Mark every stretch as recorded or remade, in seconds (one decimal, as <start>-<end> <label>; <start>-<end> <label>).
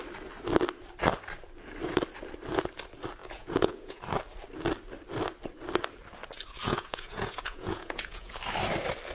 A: 0.0-3.2 recorded; 3.2-4.0 remade; 4.0-6.6 recorded; 6.6-8.4 remade; 8.4-9.1 recorded